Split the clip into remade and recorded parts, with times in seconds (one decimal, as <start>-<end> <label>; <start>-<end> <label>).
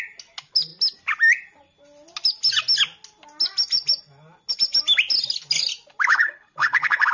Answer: 0.0-6.1 recorded; 6.1-7.1 remade